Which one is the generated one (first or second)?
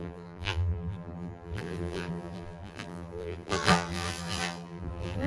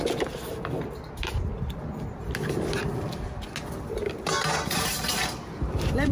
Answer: first